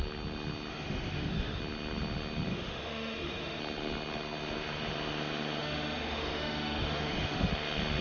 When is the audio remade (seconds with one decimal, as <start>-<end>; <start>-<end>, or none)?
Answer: 0.7-1.6; 2.5-3.6; 5.6-7.5